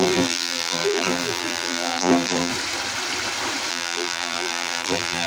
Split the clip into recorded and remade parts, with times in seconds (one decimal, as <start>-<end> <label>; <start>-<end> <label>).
0.0-2.5 remade; 2.5-3.7 recorded; 3.7-5.3 remade